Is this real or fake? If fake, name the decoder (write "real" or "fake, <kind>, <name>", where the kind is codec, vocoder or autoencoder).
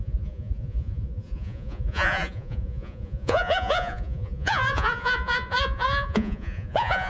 fake, vocoder, Vocos